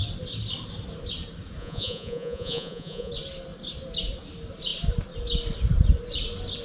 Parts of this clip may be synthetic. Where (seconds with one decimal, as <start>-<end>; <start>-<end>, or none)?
1.6-3.1